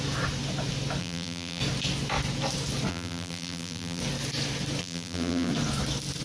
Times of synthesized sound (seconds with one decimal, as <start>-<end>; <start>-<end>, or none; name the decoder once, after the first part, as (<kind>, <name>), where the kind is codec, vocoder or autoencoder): 1.0-1.6 (vocoder, BigVGAN v2); 2.9-4.0; 4.8-5.5